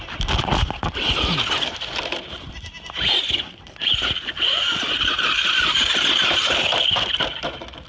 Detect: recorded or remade recorded